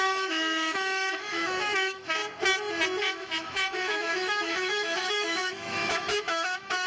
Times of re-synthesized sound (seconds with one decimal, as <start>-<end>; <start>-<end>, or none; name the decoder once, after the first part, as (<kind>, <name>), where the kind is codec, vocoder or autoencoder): 0.0-2.2 (autoencoder, DAC-VAE); 3.0-6.9